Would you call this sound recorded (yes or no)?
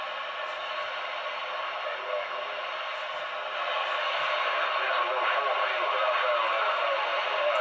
yes